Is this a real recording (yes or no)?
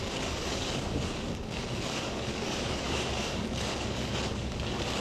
no